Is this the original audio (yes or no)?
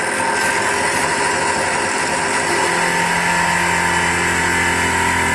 yes